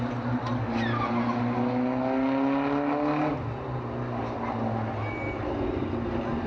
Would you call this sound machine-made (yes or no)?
no